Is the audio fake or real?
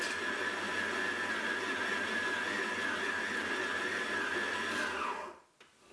real